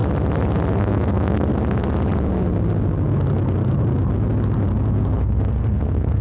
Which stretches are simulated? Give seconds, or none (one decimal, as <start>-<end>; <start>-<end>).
0.8-1.5; 5.2-6.2